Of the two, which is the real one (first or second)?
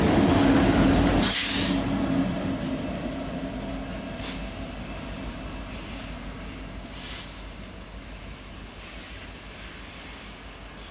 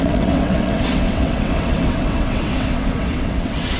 first